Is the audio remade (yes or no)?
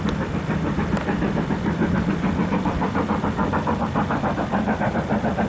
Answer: yes